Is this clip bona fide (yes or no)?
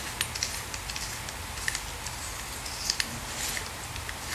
yes